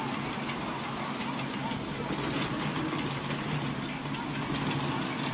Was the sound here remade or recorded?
recorded